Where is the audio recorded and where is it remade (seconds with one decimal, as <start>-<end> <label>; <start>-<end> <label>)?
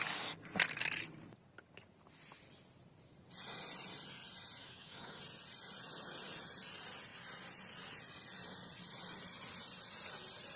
0.0-4.6 recorded; 4.6-5.2 remade; 5.2-10.6 recorded